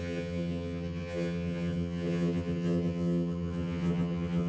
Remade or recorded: remade